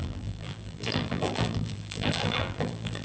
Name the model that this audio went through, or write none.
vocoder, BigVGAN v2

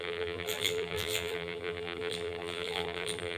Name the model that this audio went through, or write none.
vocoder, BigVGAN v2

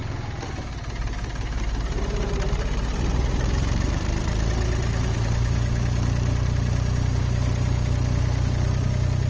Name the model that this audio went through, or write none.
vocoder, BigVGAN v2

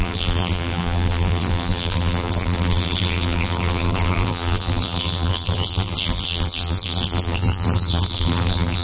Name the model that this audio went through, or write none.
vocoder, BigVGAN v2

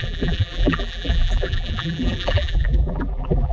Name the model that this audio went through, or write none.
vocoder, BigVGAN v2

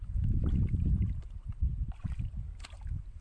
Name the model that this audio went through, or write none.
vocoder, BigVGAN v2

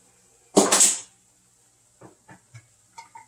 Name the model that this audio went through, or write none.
none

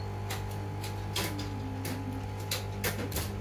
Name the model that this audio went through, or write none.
none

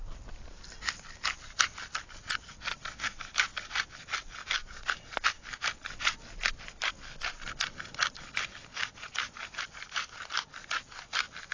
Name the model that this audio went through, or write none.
none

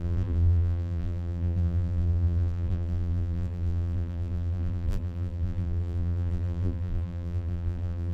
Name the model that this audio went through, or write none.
vocoder, BigVGAN v2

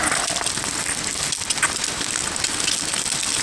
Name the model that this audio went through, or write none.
none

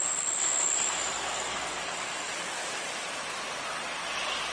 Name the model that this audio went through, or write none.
none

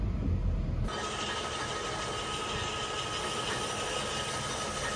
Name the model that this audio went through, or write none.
none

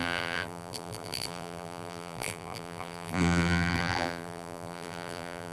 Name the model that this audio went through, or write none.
vocoder, BigVGAN v2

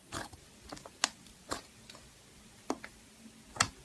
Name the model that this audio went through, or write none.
none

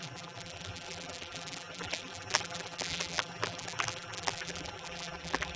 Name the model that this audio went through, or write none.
vocoder, BigVGAN v2